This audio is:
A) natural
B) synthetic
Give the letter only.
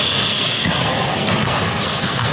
B